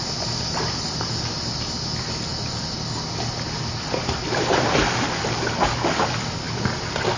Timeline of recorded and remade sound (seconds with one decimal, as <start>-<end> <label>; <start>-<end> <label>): 0.0-7.2 recorded